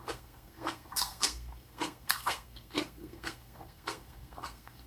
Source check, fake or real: fake